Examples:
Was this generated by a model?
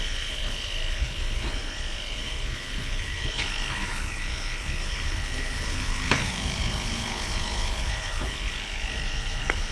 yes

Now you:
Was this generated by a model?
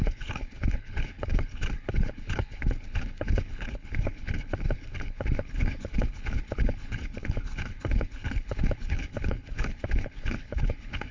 yes